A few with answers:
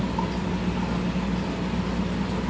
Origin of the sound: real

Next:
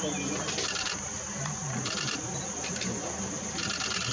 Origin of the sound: real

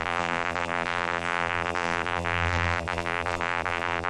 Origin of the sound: fake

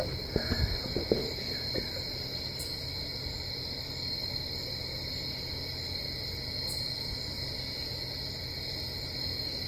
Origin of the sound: real